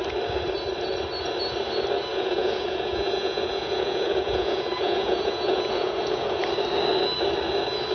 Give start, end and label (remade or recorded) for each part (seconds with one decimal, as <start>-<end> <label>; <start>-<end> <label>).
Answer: 0.0-2.1 recorded; 2.1-6.4 remade; 6.4-7.9 recorded